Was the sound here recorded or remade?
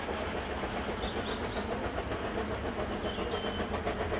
recorded